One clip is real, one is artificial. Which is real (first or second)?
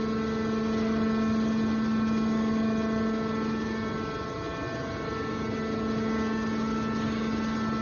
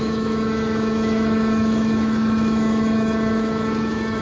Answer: first